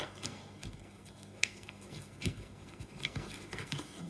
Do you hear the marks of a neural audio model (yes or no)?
yes